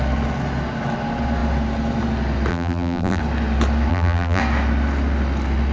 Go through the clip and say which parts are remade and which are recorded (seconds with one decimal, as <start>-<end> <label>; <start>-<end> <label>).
0.0-2.5 recorded; 2.5-3.2 remade; 3.2-3.9 recorded; 3.9-4.4 remade; 4.4-5.7 recorded